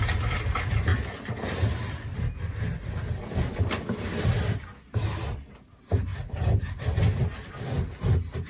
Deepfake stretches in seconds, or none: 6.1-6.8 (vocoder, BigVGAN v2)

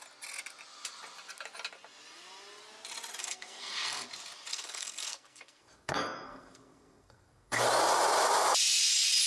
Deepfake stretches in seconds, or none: 3.2-4.1 (codec, SNAC); 4.5-7.6

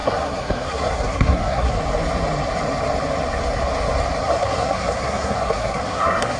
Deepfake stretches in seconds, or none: 0.0-1.8 (codec, SNAC); 4.2-6.4